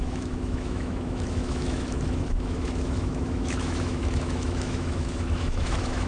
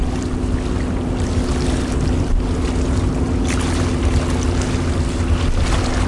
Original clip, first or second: second